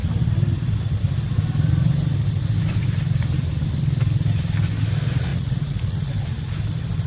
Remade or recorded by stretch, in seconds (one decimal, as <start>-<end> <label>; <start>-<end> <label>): 0.0-5.3 recorded; 5.3-6.1 remade; 6.1-7.1 recorded